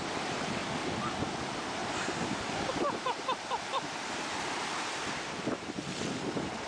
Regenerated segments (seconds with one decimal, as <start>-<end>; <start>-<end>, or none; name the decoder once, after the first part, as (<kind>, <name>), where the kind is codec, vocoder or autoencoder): 0.6-1.3 (vocoder, BigVGAN v2); 1.8-5.8